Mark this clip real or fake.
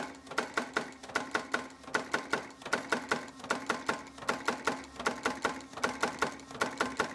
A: real